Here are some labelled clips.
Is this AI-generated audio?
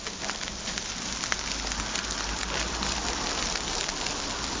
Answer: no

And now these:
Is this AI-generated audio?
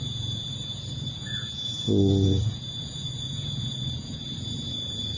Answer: yes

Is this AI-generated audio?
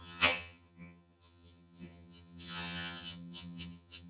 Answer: yes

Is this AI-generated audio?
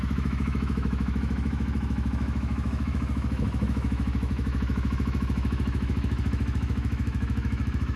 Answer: yes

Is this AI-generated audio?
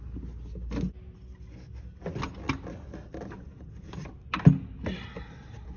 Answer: no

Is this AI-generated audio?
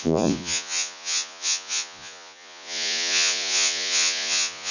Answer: yes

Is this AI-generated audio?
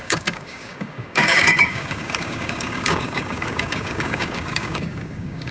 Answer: yes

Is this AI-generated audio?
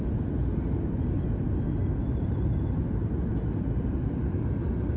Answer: yes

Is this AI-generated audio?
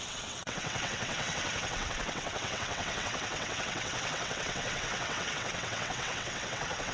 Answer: yes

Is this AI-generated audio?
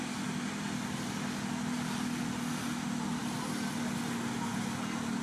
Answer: no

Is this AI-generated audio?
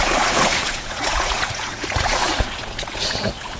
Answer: yes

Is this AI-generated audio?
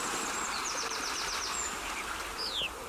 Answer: no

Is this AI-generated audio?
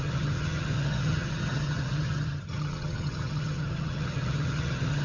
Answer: yes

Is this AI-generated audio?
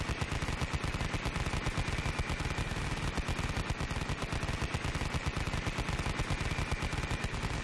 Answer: no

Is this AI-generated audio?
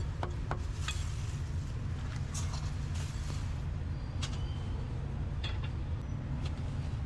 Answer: no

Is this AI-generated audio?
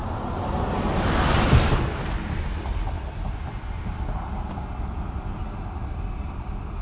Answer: no